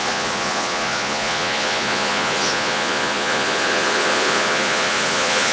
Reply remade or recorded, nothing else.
remade